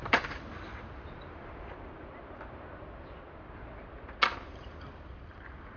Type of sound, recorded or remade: recorded